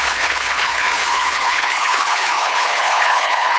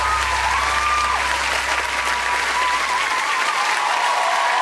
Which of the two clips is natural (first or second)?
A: second